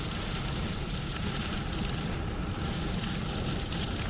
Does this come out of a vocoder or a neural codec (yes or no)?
no